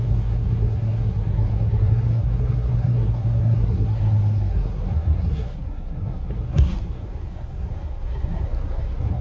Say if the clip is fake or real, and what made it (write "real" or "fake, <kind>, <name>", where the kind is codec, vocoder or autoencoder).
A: fake, codec, SNAC